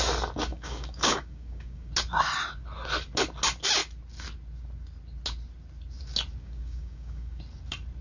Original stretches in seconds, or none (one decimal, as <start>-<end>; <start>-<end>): 0.0-0.5; 1.9-6.4; 7.4-8.0